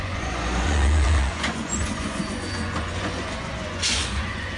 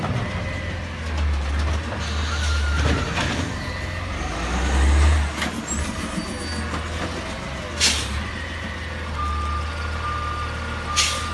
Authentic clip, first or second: second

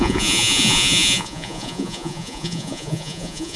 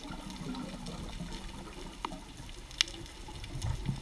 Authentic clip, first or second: second